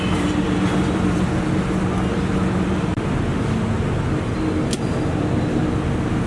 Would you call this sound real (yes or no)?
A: yes